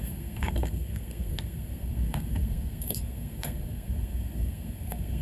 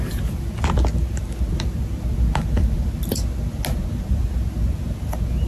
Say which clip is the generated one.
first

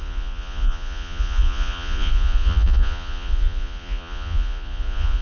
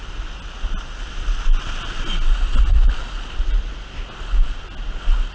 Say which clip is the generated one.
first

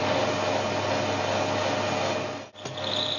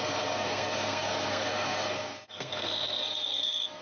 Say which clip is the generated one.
second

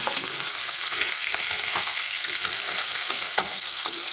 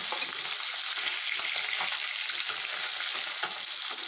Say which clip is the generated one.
first